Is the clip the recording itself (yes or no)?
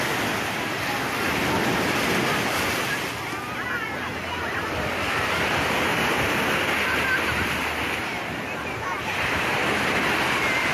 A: yes